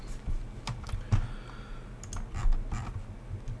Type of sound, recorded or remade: recorded